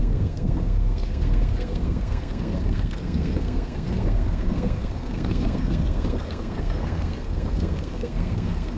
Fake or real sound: fake